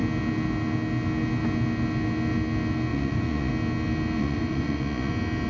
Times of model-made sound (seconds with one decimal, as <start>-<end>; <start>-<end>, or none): 2.9-3.5; 4.2-5.1